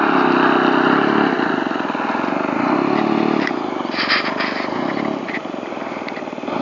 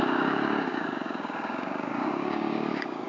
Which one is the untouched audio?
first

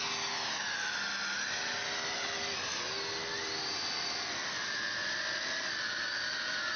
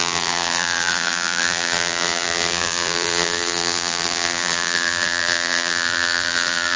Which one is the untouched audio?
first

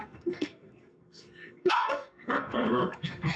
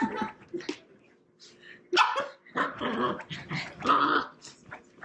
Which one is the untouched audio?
second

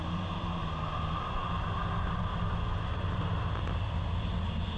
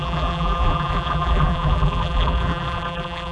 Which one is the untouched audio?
first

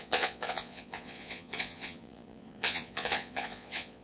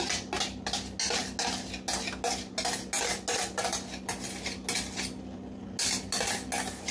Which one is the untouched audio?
second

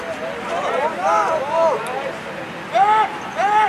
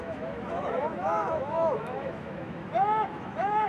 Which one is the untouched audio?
first